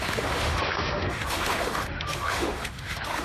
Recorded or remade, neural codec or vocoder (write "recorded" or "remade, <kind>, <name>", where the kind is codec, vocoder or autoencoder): remade, autoencoder, DAC-VAE